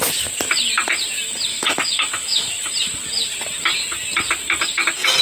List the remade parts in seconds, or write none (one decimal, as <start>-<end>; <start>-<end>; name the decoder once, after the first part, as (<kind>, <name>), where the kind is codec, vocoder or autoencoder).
1.5-2.7 (autoencoder, DAC-VAE)